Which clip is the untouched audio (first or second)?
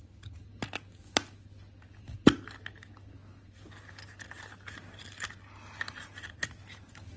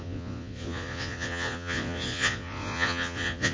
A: first